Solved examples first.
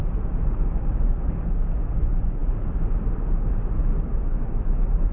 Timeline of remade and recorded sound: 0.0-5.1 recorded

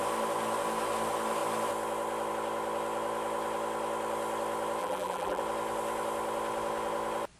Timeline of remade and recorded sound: 0.0-4.8 recorded; 4.8-5.4 remade; 5.4-7.4 recorded

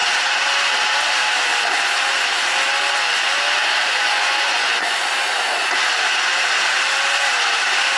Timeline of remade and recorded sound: 0.0-3.6 recorded; 3.6-5.1 remade; 5.1-8.0 recorded

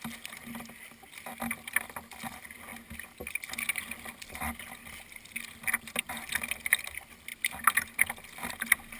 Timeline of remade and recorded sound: 0.0-9.0 recorded

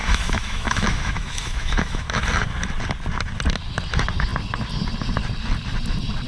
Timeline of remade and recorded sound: 0.0-2.2 remade; 2.2-6.3 recorded

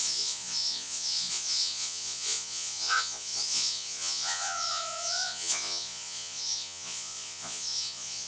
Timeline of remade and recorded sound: 0.0-8.3 remade

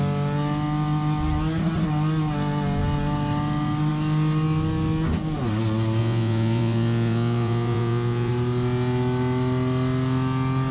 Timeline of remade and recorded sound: 0.0-6.0 recorded; 6.0-8.3 remade; 8.3-10.7 recorded